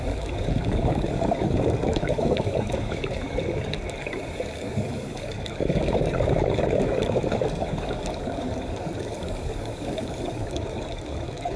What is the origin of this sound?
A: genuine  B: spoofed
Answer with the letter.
B